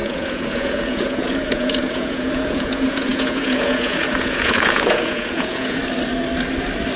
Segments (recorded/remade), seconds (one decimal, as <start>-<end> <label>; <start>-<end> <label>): 0.0-5.8 remade; 5.8-7.0 recorded